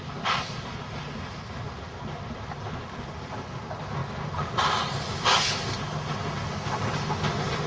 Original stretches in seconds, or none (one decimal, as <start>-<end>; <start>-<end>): 0.0-7.7